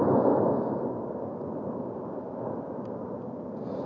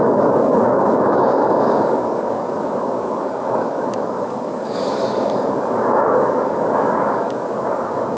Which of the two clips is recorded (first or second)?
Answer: first